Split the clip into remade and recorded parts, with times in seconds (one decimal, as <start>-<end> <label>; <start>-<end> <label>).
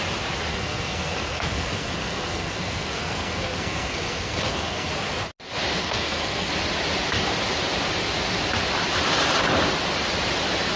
0.0-0.5 recorded; 0.5-4.9 remade; 4.9-5.8 recorded; 5.8-6.5 remade; 6.5-10.8 recorded